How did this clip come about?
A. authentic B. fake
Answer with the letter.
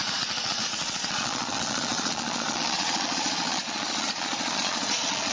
B